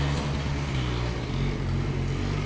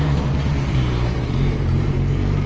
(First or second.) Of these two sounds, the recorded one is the first